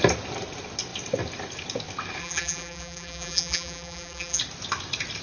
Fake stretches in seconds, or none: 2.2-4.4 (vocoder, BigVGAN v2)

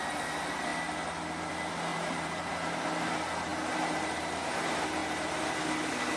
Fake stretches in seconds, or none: 1.9-2.5 (vocoder, BigVGAN v2)